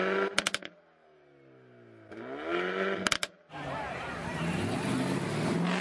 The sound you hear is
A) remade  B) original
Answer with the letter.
B